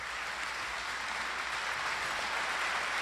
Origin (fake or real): real